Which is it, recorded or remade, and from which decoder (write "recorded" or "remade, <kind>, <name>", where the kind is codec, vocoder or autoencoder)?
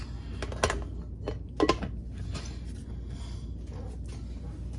recorded